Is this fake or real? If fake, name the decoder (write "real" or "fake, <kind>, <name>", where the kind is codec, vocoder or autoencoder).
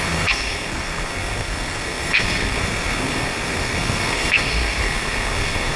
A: fake, codec, SNAC